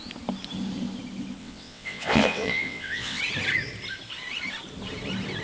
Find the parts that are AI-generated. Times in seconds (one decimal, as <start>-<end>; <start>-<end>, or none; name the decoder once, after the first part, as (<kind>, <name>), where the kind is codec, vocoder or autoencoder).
1.4-3.2 (vocoder, WaveNeXt)